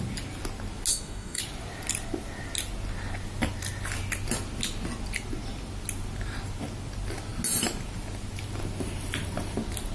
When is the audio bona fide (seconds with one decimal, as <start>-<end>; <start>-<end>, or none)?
0.0-0.9; 1.4-9.9